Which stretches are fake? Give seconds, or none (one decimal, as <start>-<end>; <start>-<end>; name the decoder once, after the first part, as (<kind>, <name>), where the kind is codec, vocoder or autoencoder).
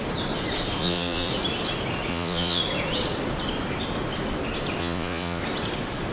0.8-1.3 (vocoder, Vocos); 2.1-2.6; 4.8-5.4